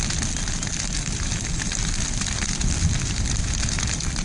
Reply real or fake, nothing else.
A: real